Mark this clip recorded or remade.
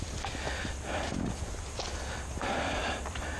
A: remade